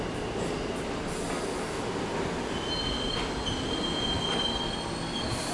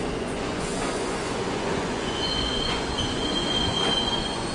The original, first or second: first